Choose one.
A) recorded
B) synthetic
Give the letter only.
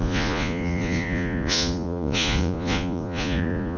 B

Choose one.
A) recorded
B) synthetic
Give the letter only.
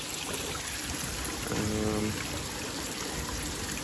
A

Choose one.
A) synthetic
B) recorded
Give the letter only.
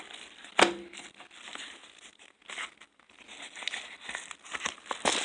B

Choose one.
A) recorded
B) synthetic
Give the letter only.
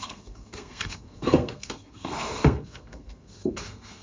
B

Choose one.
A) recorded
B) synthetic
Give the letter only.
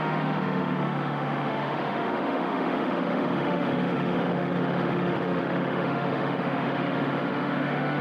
B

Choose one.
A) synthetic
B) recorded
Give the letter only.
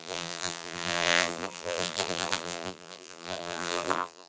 A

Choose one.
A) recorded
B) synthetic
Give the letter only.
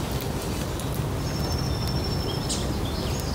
A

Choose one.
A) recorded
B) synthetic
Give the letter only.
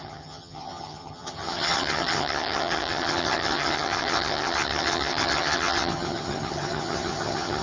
B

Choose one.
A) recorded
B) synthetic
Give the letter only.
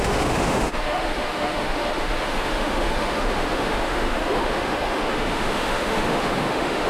B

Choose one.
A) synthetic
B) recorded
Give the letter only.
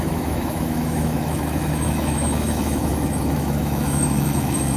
A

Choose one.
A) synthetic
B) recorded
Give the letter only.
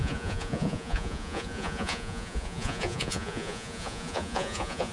A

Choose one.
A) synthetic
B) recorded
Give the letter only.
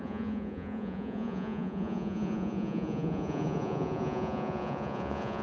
A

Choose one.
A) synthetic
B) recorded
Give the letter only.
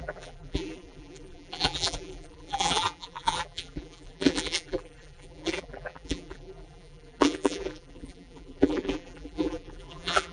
A